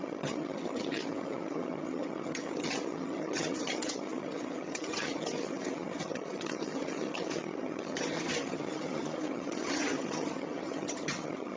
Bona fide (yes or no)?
no